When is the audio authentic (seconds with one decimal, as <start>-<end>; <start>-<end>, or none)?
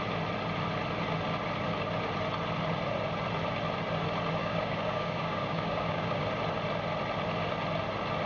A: 0.0-4.4; 6.2-8.3